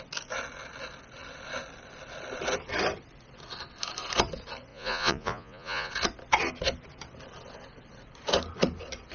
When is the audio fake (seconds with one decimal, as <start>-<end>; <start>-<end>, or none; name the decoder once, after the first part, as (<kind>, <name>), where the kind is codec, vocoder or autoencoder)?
4.7-5.9 (vocoder, Vocos)